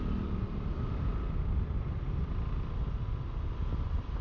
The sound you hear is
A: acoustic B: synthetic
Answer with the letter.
A